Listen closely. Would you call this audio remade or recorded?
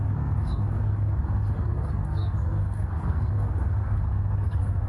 remade